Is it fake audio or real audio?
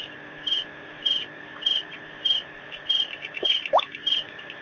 fake